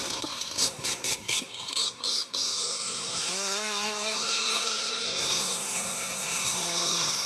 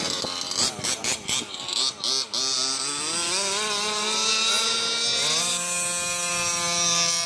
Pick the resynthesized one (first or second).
first